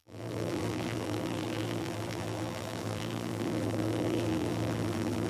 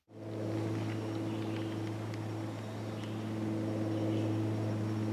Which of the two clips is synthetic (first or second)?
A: first